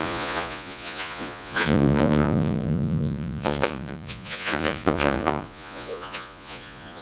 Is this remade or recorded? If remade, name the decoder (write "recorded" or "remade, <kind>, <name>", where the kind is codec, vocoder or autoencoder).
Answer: remade, vocoder, Vocos